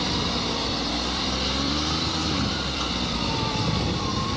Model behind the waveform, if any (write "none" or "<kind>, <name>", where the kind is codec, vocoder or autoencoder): vocoder, BigVGAN v2